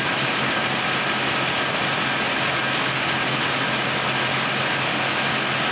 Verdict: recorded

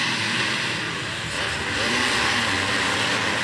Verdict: recorded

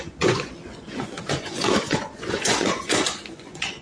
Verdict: remade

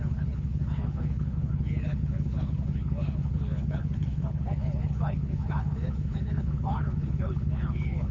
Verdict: remade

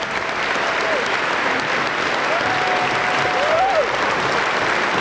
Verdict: recorded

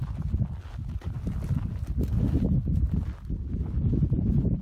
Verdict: recorded